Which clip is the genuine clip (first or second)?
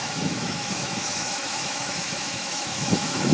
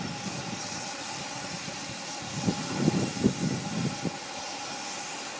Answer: second